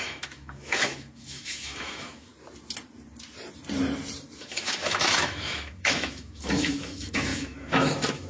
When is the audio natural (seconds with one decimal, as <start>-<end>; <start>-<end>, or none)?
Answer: 2.3-4.4